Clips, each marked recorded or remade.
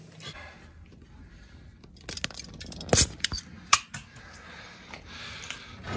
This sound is recorded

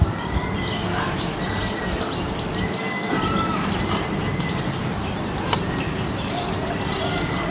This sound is recorded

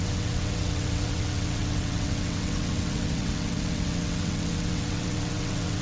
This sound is remade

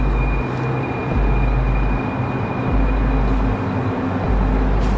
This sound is recorded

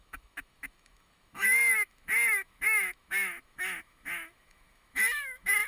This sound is remade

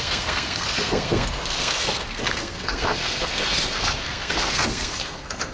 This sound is remade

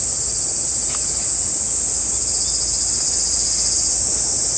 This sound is recorded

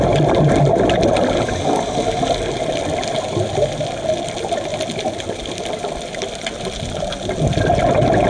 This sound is recorded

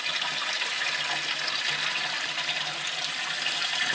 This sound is recorded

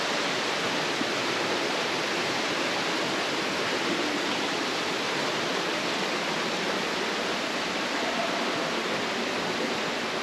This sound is recorded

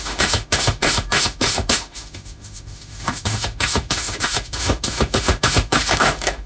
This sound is remade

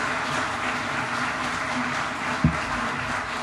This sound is recorded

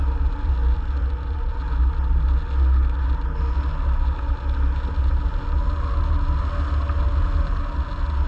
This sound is recorded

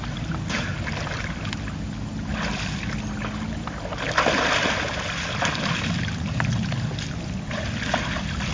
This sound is recorded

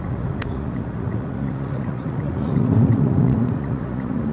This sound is remade